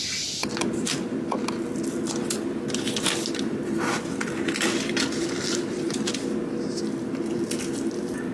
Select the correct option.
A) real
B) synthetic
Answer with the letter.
A